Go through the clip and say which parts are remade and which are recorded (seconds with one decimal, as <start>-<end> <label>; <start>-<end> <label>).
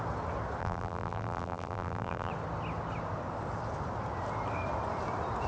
0.0-0.6 recorded; 0.6-2.3 remade; 2.3-5.5 recorded